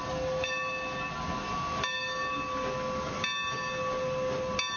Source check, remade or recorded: recorded